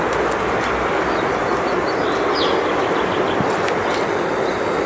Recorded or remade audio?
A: recorded